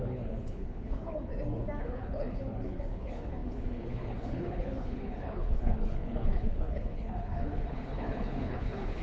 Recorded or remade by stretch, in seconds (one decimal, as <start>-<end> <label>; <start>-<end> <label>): 0.0-1.3 remade; 1.3-1.8 recorded; 1.8-9.0 remade